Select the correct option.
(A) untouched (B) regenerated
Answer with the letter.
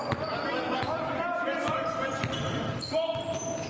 A